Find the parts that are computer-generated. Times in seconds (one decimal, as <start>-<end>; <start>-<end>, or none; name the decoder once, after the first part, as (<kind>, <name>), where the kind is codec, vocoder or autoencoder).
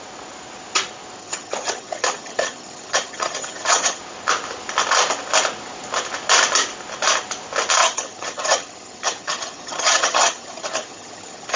1.2-4.0 (vocoder, HiFi-GAN); 7.8-11.6